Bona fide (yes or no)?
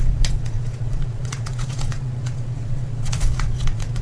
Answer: no